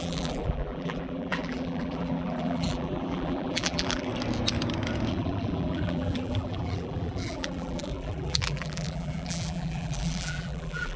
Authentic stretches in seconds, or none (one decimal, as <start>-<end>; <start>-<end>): 4.1-5.1